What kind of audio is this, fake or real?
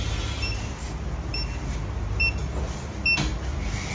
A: real